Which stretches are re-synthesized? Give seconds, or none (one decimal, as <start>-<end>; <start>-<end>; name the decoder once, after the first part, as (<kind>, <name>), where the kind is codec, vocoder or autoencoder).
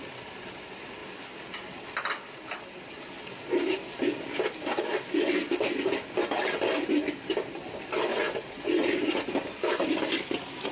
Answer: 8.1-9.3 (vocoder, Vocos)